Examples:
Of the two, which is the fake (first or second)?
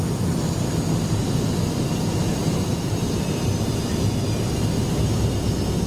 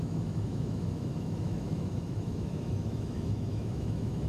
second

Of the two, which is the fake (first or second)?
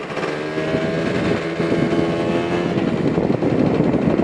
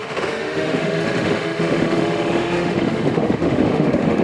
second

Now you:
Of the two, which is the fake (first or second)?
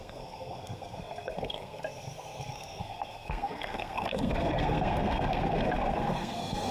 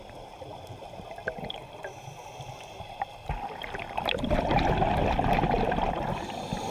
first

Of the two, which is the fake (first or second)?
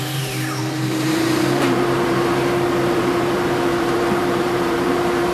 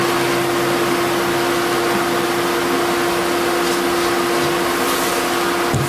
first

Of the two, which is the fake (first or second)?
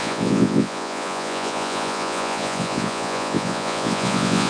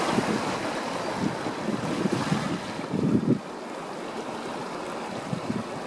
first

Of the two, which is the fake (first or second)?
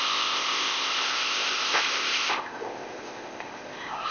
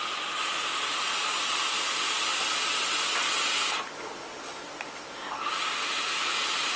first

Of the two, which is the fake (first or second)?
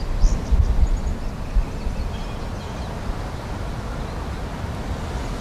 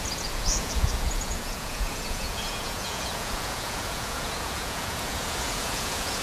second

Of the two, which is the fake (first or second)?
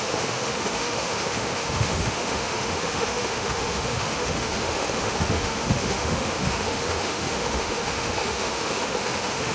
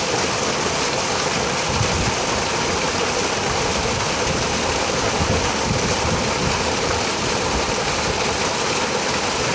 first